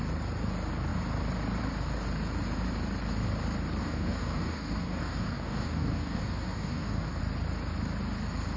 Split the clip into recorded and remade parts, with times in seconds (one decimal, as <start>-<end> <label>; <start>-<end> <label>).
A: 0.0-3.8 recorded; 3.8-7.2 remade; 7.2-8.6 recorded